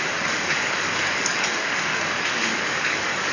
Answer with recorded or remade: remade